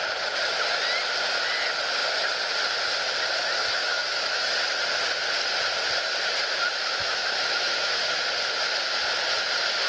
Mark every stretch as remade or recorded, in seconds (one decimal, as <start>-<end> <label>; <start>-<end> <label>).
0.0-3.6 recorded; 3.6-4.5 remade; 4.5-7.0 recorded; 7.0-8.2 remade; 8.2-9.9 recorded